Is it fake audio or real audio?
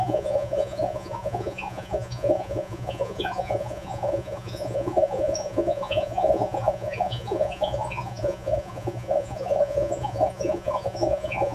fake